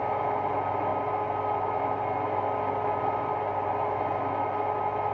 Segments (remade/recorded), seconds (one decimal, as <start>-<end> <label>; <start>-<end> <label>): 0.0-5.1 recorded

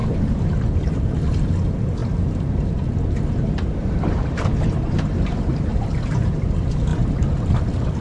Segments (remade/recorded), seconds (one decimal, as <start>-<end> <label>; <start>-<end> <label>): 0.0-1.0 remade; 1.0-2.0 recorded; 2.0-6.3 remade; 6.3-6.9 recorded; 6.9-7.5 remade; 7.5-8.0 recorded

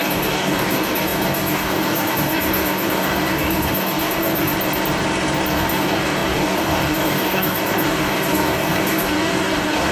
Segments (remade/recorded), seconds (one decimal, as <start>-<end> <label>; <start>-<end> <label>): 0.0-4.5 remade; 4.5-5.5 recorded; 5.5-9.9 remade